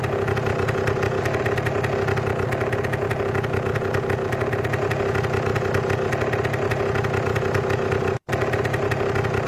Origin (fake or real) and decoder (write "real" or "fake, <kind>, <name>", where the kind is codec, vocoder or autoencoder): real